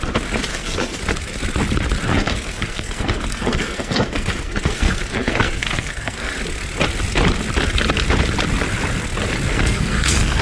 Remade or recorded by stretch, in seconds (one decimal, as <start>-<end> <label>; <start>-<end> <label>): 0.0-0.5 recorded; 0.5-1.0 remade; 1.0-2.1 recorded; 2.1-6.3 remade; 6.3-9.5 recorded; 9.5-10.4 remade